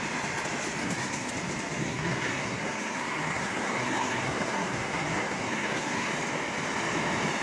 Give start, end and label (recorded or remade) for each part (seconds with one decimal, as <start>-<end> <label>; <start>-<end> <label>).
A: 0.0-0.8 recorded; 0.8-1.3 remade; 1.3-1.8 recorded; 1.8-6.1 remade; 6.1-7.4 recorded

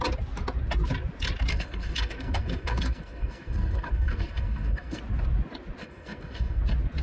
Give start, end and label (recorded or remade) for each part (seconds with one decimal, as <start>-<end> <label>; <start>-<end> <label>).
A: 0.0-1.5 recorded; 1.5-5.0 remade; 5.0-5.8 recorded; 5.8-6.6 remade; 6.6-7.0 recorded

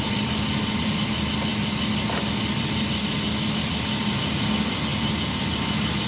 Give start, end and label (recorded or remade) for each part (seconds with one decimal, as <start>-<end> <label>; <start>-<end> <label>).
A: 0.0-6.1 recorded

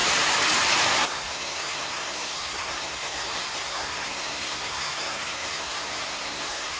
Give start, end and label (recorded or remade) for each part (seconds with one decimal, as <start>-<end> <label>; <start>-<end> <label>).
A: 0.0-0.9 recorded; 0.9-6.8 remade

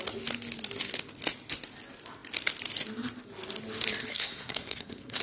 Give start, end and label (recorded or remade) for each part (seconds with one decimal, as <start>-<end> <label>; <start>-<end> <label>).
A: 0.0-4.1 recorded; 4.1-5.2 remade

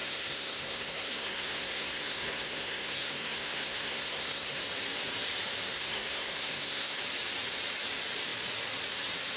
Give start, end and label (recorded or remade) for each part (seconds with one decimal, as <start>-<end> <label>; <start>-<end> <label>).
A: 0.0-4.6 remade; 4.6-5.7 recorded; 5.7-7.0 remade; 7.0-9.4 recorded

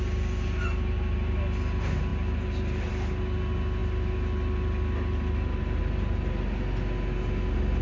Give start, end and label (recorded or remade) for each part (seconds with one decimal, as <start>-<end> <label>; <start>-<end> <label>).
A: 0.0-7.8 recorded